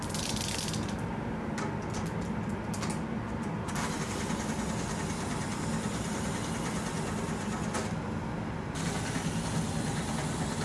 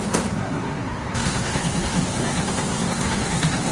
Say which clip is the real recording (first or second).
first